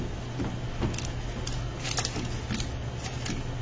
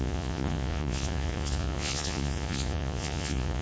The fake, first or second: second